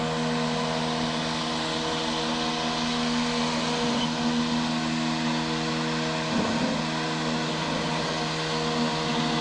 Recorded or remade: recorded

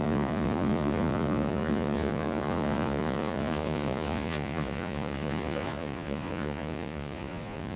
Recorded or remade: remade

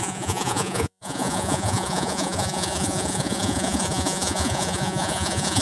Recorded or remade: remade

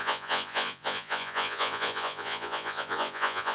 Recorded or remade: remade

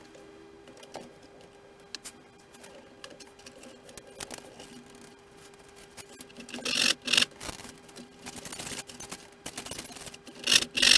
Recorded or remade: recorded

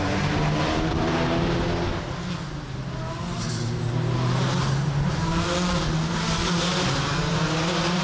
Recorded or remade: recorded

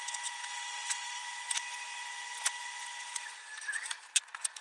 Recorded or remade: remade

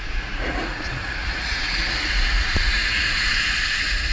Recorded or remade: remade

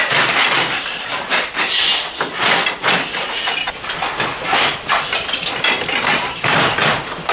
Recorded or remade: recorded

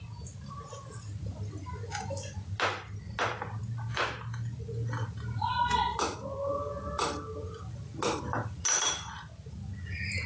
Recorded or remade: recorded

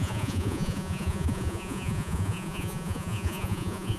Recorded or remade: remade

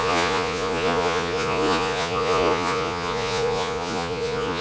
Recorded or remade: remade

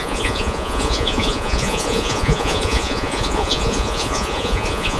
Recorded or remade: remade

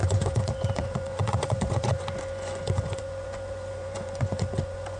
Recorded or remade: remade